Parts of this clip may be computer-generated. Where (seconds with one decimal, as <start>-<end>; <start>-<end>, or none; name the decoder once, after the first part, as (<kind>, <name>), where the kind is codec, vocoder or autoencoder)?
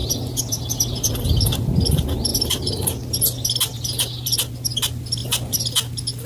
0.0-1.1 (vocoder, BigVGAN v2); 2.3-2.9